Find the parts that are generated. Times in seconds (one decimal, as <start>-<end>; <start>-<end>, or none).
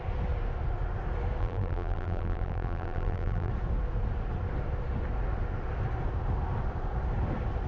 1.4-3.5